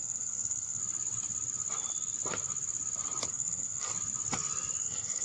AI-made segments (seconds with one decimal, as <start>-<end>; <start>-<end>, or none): 0.0-0.8; 3.3-3.9; 4.8-5.2